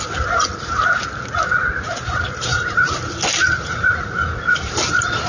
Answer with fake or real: real